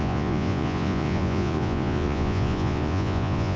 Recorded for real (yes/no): no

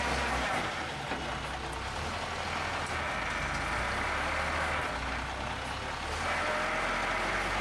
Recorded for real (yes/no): yes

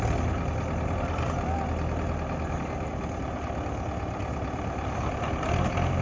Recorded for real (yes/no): yes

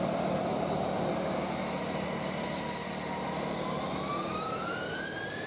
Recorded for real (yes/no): yes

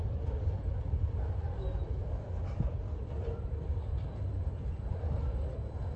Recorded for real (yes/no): no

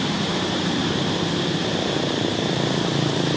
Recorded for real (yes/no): no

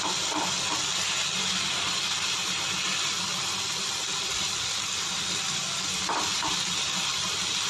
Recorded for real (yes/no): yes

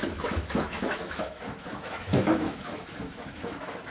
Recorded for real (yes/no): no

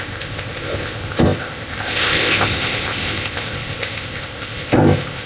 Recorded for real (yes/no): no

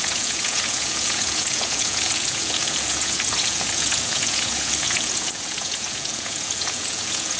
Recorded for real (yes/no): no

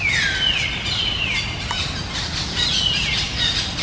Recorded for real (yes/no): yes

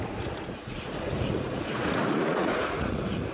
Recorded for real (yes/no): no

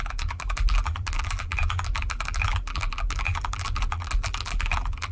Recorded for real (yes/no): no